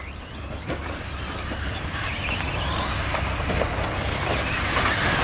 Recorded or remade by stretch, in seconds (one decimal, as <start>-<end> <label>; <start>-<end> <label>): 0.0-2.1 remade; 2.1-3.1 recorded; 3.1-5.2 remade